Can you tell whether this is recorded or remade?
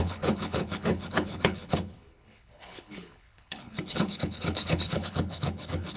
remade